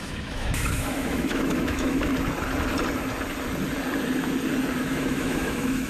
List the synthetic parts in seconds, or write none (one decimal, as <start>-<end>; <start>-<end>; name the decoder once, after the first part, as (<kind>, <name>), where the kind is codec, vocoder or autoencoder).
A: 0.0-2.1 (autoencoder, DAC-VAE); 4.8-5.9